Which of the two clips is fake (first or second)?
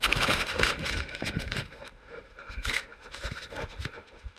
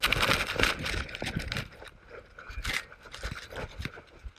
first